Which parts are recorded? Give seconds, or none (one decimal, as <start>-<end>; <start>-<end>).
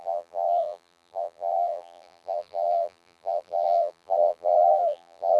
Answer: none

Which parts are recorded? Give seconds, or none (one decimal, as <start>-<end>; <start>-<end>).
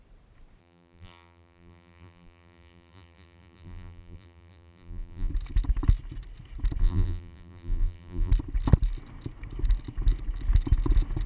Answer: 0.0-0.6; 5.3-6.8; 8.3-11.3